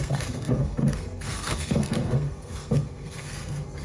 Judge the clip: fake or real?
fake